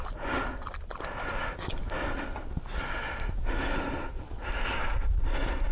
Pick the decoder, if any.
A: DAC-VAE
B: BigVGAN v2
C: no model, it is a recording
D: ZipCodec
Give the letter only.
C